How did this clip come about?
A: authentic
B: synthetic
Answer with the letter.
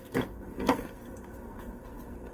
B